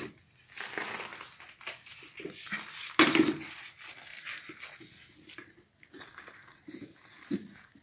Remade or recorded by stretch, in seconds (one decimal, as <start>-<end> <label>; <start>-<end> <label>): 0.0-7.8 recorded